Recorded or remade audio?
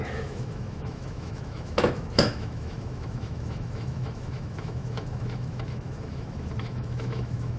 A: remade